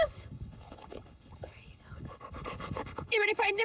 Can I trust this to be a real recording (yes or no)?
no